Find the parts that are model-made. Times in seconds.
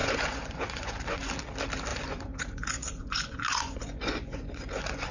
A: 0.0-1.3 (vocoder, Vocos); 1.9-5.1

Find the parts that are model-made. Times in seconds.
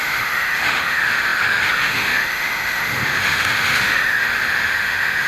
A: 0.0-5.3 (autoencoder, DAC-VAE)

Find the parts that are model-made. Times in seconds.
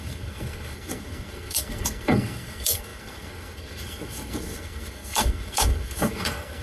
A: 0.0-6.6 (codec, SNAC)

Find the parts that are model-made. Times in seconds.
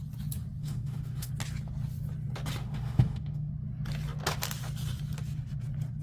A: 0.6-1.3 (autoencoder, DAC-VAE); 2.6-3.5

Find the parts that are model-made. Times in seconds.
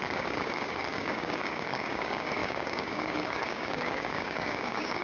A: 0.0-5.0 (codec, DAC)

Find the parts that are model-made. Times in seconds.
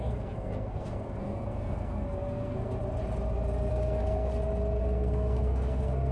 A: 0.0-2.7 (codec, SNAC); 3.7-4.3; 4.8-6.1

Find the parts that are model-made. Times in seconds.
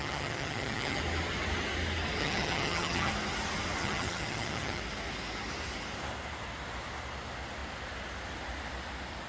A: 0.0-1.0 (vocoder, HiFi-GAN); 2.2-3.1; 3.8-4.8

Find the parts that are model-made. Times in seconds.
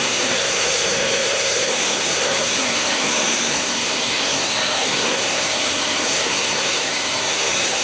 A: 0.0-7.8 (codec, SNAC)